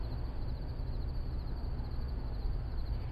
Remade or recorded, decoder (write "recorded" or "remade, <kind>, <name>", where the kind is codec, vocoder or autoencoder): recorded